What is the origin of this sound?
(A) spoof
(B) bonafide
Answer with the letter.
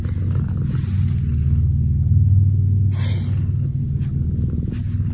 B